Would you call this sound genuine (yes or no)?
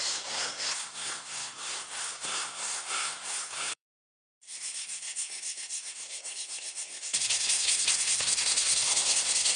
no